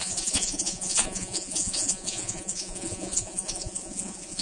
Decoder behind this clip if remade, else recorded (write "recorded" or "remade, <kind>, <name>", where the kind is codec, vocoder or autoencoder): remade, vocoder, Vocos